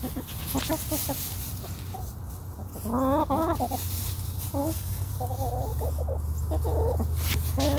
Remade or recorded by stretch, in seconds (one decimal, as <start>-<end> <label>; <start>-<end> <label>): 0.0-4.6 recorded; 4.6-5.1 remade; 5.1-7.8 recorded